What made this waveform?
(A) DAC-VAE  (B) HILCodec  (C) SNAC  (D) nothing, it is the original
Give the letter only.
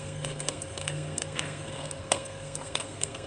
C